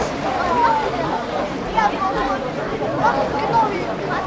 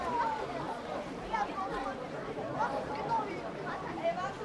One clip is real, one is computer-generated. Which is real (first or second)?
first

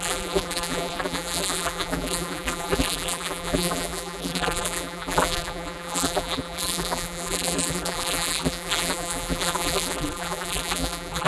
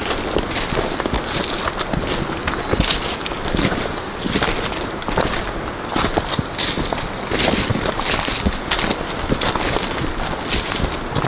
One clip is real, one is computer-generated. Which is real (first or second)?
second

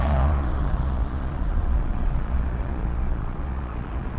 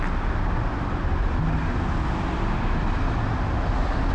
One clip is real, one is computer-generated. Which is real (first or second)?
second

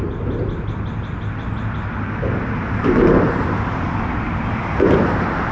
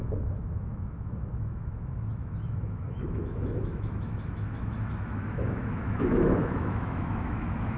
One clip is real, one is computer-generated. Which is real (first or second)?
first